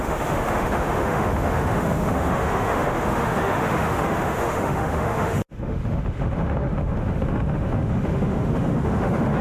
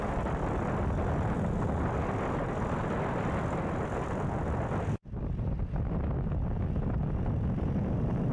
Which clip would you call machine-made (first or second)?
first